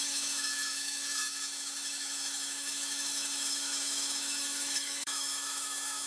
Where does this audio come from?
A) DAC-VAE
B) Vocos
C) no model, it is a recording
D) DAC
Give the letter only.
A